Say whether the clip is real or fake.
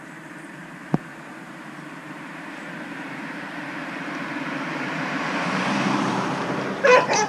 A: fake